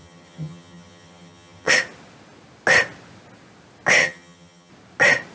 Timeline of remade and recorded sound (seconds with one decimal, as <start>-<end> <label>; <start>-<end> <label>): 0.0-1.7 remade; 1.7-4.0 recorded; 4.0-4.7 remade; 4.7-5.3 recorded